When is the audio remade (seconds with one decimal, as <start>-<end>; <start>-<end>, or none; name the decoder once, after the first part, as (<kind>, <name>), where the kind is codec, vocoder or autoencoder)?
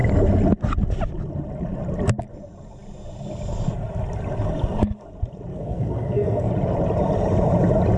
5.5-6.5 (codec, SNAC)